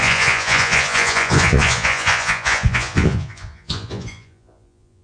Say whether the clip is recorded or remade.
remade